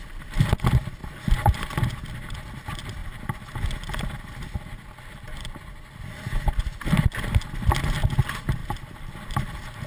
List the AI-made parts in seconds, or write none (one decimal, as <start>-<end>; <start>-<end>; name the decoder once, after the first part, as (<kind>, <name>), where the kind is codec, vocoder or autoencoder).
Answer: 1.0-1.9 (vocoder, BigVGAN v2); 8.6-9.1